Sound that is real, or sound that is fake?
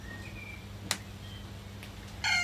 real